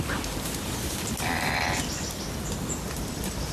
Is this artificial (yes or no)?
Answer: no